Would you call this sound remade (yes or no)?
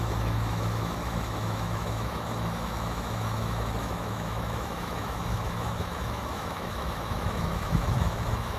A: yes